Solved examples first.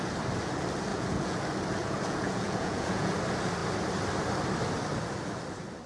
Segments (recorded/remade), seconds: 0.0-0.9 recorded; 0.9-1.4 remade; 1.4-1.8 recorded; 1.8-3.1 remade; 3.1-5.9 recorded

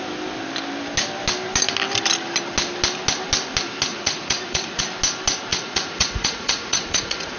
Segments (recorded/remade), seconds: 0.0-3.9 recorded; 3.9-4.8 remade; 4.8-5.5 recorded; 5.5-7.4 remade

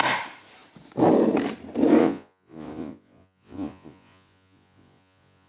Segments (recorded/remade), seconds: 0.0-2.0 recorded; 2.0-5.5 remade

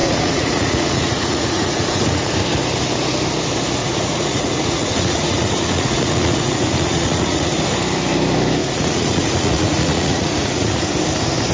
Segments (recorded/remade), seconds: 0.0-2.3 remade; 2.3-3.8 recorded; 3.8-7.6 remade; 7.6-8.6 recorded; 8.6-10.9 remade; 10.9-11.5 recorded

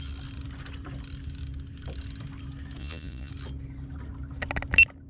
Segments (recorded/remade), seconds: 0.0-2.8 recorded; 2.8-3.3 remade; 3.3-5.1 recorded